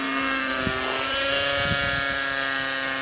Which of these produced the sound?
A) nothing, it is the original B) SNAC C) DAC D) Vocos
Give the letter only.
A